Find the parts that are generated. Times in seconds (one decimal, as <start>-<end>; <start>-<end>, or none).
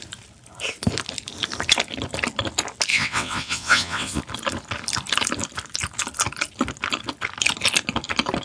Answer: 2.9-4.2